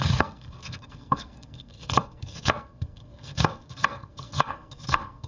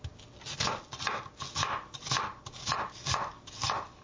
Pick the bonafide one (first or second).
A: second